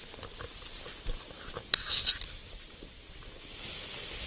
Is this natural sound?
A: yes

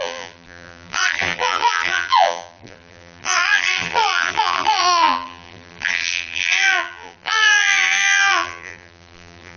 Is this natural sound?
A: no